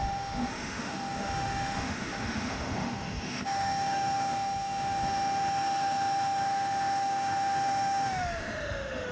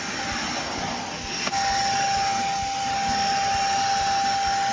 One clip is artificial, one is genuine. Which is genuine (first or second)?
second